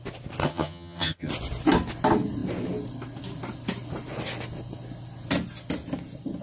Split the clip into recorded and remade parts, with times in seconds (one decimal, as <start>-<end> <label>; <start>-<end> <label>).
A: 0.0-0.4 recorded; 0.4-1.3 remade; 1.3-6.4 recorded